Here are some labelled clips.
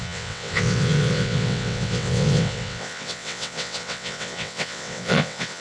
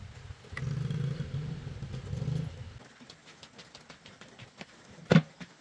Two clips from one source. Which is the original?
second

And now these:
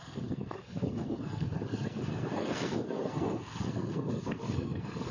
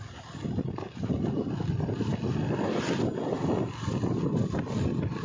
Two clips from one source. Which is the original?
second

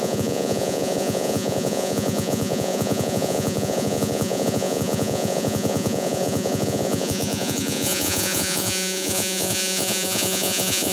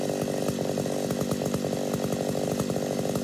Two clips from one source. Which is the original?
second